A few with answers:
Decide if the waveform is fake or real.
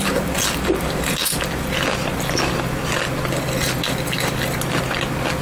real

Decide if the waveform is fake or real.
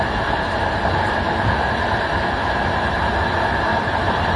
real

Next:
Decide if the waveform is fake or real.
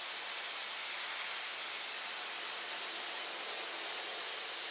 real